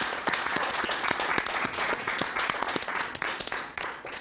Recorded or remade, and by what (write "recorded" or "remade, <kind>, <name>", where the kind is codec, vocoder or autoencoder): remade, vocoder, Vocos